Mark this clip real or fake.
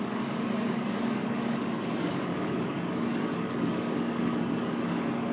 fake